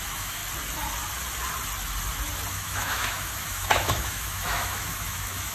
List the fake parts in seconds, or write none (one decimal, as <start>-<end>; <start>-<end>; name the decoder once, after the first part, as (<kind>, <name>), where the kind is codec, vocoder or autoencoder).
0.0-0.4 (autoencoder, DAC-VAE); 2.5-5.5